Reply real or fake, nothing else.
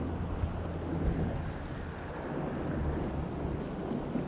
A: real